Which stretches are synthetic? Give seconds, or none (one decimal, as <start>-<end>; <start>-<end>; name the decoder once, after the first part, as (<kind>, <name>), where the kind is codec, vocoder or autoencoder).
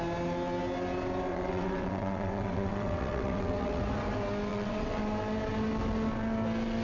1.3-3.8 (vocoder, WaveNeXt); 4.5-5.0